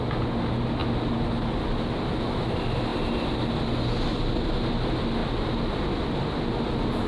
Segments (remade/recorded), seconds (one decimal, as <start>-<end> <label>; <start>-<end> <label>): 0.0-7.1 recorded